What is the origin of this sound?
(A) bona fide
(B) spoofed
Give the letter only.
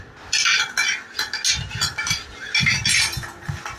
A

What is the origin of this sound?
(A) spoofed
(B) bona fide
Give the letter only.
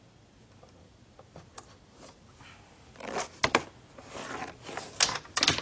B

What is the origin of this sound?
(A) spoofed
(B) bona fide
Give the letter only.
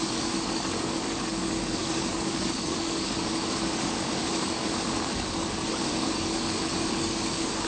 A